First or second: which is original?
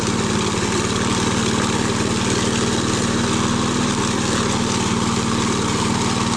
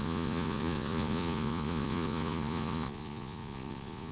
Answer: first